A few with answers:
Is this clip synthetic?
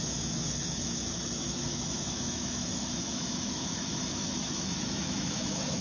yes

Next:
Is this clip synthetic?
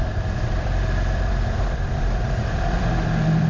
yes